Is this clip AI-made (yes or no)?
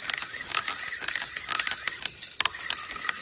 no